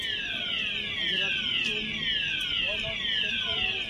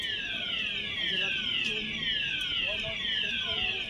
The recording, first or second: first